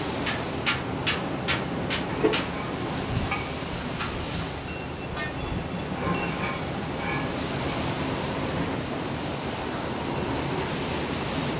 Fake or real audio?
real